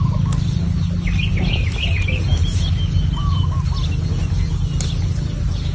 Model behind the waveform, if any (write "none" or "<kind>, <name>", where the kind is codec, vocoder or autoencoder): none